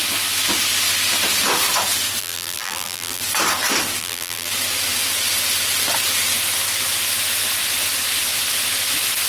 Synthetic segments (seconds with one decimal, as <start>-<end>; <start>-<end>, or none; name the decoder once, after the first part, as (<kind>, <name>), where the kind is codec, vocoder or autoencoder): 2.2-3.2 (vocoder, BigVGAN v2); 4.0-4.5